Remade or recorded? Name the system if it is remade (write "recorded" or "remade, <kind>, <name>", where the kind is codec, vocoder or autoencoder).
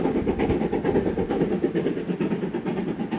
recorded